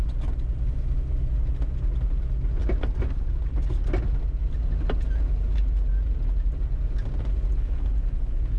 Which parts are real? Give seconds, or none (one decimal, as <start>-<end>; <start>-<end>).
0.0-8.6